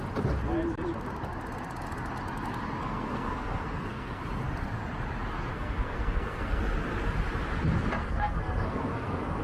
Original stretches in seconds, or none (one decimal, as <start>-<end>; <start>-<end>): 0.0-2.8; 4.2-5.5; 6.6-8.0